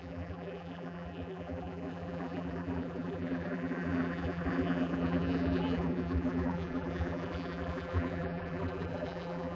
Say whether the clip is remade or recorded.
remade